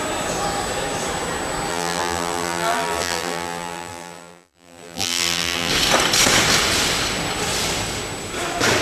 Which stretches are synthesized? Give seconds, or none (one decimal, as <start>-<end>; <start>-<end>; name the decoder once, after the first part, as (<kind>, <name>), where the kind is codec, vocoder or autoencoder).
1.7-5.7 (vocoder, BigVGAN v2)